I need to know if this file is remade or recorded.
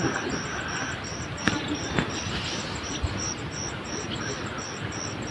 recorded